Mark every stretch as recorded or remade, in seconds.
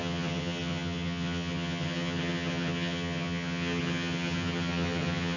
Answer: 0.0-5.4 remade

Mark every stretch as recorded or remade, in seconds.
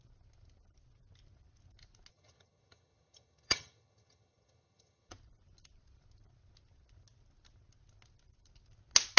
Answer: 0.0-2.1 recorded; 2.1-5.1 remade; 5.1-9.2 recorded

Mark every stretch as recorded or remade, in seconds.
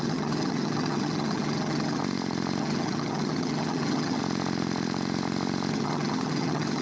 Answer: 0.0-2.0 remade; 2.0-2.6 recorded; 2.6-4.2 remade; 4.2-5.7 recorded; 5.7-6.8 remade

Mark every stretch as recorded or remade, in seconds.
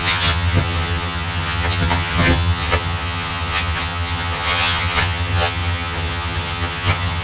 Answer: 0.0-7.2 remade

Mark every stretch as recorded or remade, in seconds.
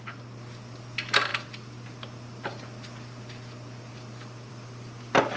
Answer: 0.0-5.4 recorded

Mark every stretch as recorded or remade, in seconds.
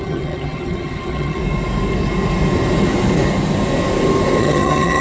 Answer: 0.0-1.4 remade; 1.4-4.4 recorded; 4.4-5.0 remade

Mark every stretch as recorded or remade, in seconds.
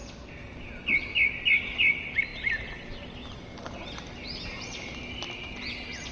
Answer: 0.0-6.1 recorded